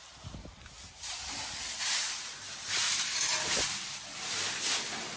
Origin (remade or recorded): recorded